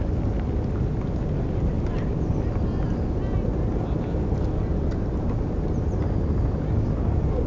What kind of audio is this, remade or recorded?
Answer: recorded